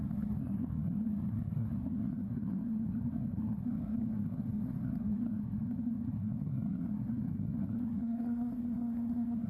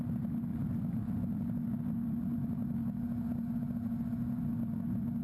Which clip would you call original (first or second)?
second